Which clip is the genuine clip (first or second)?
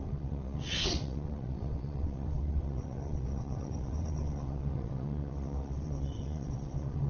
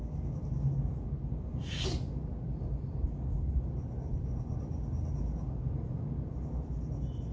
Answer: second